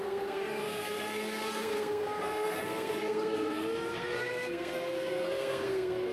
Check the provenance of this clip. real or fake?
fake